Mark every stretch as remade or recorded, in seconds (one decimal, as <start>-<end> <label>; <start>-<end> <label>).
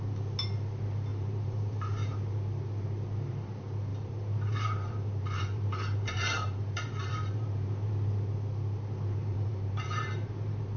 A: 0.0-1.1 recorded; 1.1-2.2 remade; 2.2-3.9 recorded; 3.9-7.9 remade; 7.9-9.2 recorded; 9.2-10.8 remade